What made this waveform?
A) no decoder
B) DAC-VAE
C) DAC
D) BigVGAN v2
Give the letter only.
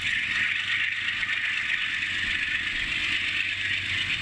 A